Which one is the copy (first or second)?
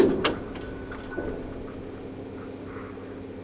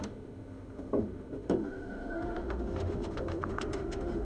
second